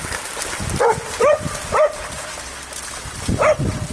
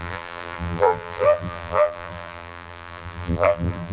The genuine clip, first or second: first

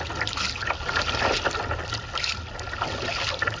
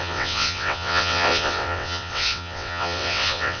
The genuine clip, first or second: first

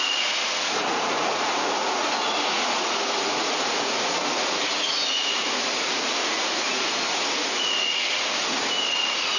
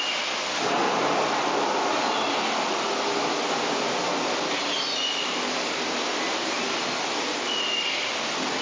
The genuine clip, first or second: second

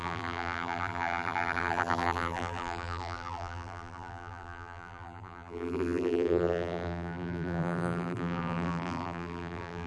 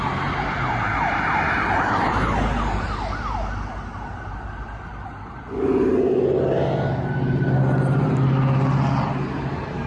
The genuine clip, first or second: second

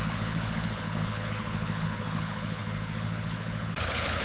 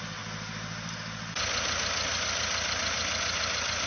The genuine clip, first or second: second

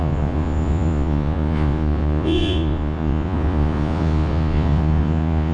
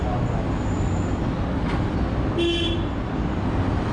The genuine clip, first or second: second